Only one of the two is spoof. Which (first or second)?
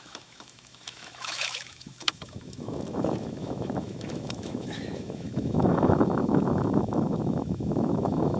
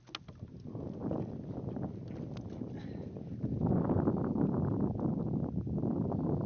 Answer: first